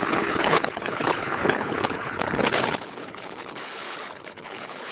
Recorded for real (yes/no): no